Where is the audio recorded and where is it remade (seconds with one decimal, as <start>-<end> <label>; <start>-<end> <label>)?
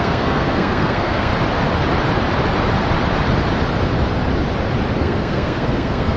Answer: 0.0-1.3 remade; 1.3-5.0 recorded; 5.0-6.2 remade